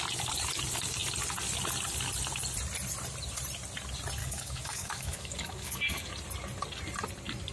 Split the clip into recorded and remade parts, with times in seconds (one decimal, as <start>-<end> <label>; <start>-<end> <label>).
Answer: 0.0-4.2 recorded; 4.2-6.1 remade; 6.1-7.5 recorded